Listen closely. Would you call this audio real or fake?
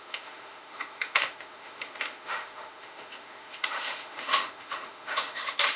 fake